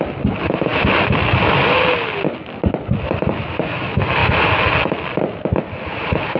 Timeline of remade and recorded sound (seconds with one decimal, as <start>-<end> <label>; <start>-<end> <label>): 0.0-6.4 recorded